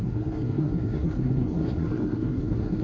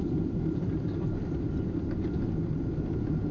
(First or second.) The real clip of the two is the second